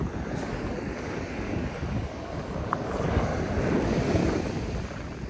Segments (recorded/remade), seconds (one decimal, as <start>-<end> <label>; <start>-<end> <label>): 0.0-3.3 remade; 3.3-3.8 recorded; 3.8-4.2 remade; 4.2-5.3 recorded